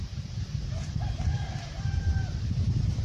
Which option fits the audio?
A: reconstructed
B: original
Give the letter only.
A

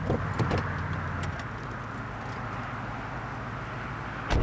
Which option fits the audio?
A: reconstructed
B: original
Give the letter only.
B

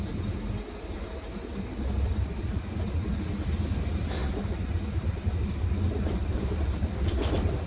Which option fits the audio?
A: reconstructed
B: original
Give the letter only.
B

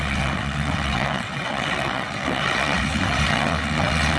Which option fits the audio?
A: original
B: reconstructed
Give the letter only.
B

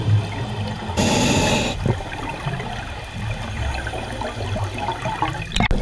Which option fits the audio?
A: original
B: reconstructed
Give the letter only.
A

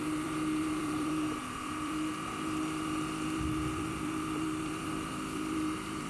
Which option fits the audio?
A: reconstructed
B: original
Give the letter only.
A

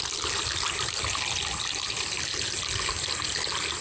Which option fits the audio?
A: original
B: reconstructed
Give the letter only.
A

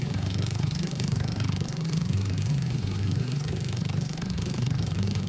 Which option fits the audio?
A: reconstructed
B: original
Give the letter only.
A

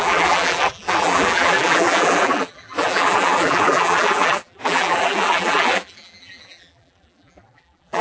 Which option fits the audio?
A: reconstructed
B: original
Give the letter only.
A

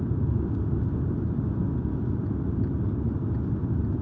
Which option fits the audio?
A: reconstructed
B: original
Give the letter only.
B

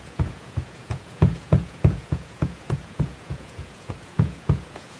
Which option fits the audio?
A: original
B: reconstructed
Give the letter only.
B